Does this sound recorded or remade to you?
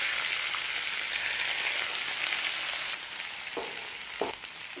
recorded